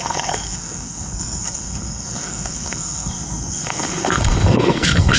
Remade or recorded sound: remade